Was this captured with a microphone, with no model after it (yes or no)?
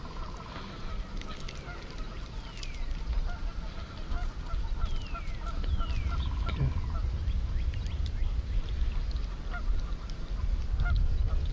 yes